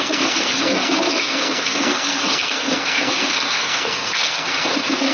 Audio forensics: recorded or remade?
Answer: remade